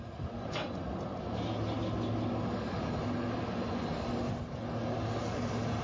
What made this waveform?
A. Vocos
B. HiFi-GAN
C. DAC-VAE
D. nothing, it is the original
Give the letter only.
D